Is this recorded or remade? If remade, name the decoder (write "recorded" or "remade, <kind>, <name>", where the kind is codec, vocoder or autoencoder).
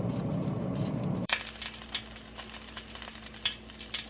remade, vocoder, BigVGAN v2